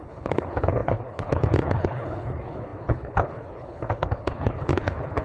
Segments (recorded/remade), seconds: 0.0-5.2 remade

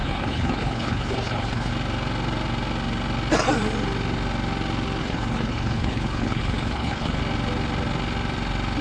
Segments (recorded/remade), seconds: 0.0-1.7 remade; 1.7-5.0 recorded; 5.0-7.2 remade; 7.2-8.8 recorded

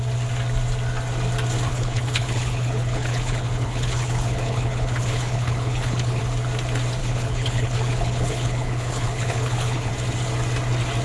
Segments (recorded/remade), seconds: 0.0-1.7 recorded; 1.7-6.2 remade; 6.2-7.0 recorded; 7.0-9.9 remade; 9.9-11.0 recorded

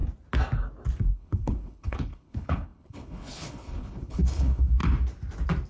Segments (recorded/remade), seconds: 0.0-1.0 recorded; 1.0-4.8 remade; 4.8-5.7 recorded